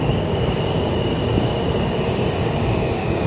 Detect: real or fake fake